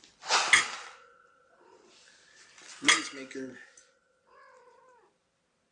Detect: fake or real real